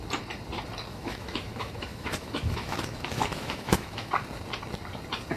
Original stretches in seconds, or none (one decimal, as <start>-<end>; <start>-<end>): 0.0-0.9; 4.1-5.4